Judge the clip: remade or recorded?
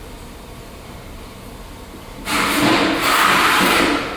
recorded